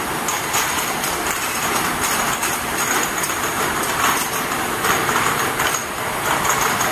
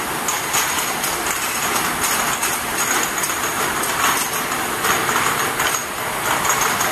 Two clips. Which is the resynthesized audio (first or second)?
first